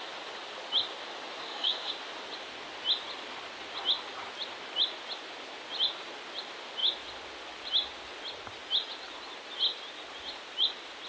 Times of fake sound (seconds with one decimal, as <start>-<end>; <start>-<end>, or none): 1.4-1.9